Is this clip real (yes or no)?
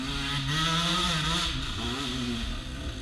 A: yes